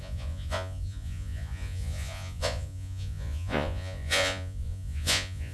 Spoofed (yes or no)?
yes